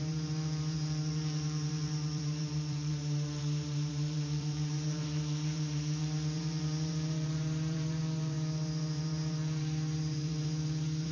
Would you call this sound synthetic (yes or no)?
yes